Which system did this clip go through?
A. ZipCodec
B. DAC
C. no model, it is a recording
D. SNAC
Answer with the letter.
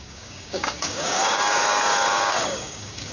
B